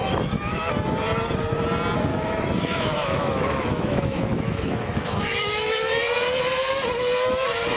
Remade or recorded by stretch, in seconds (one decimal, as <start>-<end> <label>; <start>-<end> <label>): 0.0-0.7 remade; 0.7-2.1 recorded; 2.1-5.9 remade; 5.9-7.8 recorded